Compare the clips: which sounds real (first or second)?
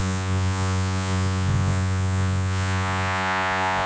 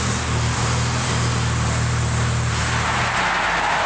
second